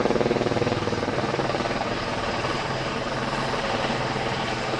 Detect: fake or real fake